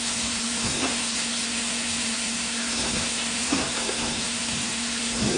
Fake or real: fake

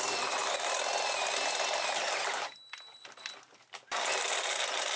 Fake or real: real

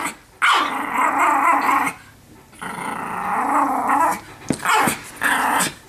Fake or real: real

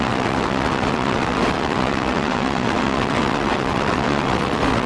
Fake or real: fake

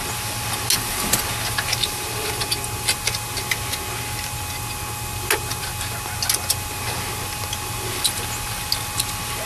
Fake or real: real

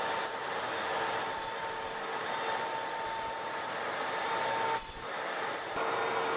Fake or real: real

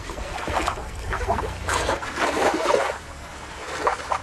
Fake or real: fake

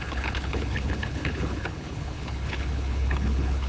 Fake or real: fake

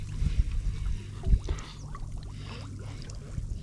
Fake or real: real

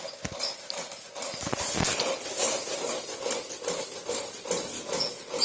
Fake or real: real